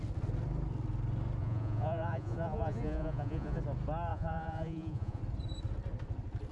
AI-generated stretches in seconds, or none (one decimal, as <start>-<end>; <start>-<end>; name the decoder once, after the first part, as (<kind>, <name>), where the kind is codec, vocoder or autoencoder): 1.4-3.6 (vocoder, Vocos); 4.1-5.2